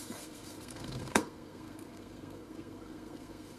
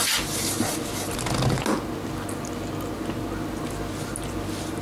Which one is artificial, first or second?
first